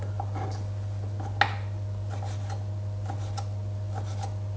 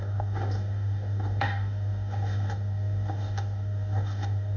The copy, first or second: second